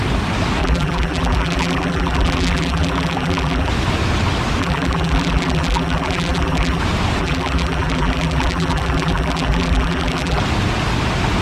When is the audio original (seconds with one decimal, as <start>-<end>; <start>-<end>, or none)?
0.0-0.6; 3.7-4.6; 6.8-7.2; 10.4-11.4